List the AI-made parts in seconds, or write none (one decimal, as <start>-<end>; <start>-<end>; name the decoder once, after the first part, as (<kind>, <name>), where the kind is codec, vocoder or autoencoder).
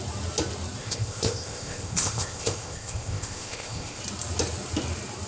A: 0.8-4.0 (codec, ZipCodec)